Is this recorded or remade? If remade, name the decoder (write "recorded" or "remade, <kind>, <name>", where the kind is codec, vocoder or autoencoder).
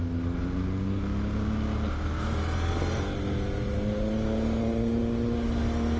recorded